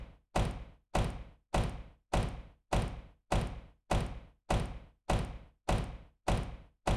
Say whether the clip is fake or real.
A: real